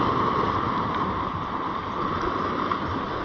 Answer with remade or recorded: recorded